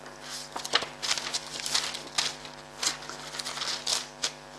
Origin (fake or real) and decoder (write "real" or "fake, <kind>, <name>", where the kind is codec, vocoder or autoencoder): real